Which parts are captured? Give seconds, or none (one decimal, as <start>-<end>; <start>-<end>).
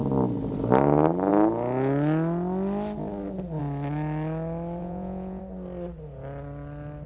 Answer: 0.0-4.8; 5.4-7.1